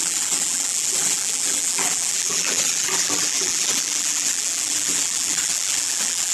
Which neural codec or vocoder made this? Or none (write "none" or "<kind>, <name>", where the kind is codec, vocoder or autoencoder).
vocoder, BigVGAN v2